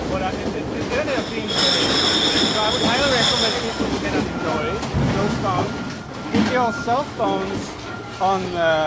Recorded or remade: recorded